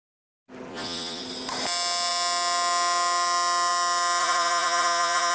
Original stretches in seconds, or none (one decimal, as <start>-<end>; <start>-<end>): 0.0-0.7; 1.2-4.2